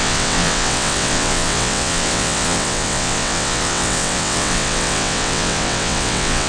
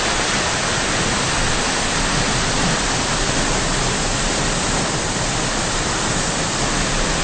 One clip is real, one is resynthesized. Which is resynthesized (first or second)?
first